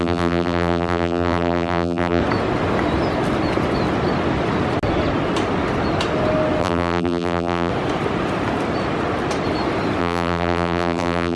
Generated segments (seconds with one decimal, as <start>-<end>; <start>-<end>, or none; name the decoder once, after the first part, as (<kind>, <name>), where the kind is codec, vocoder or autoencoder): 0.0-2.2 (vocoder, BigVGAN v2); 6.6-7.7; 10.0-11.4